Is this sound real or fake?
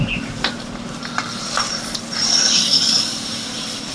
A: fake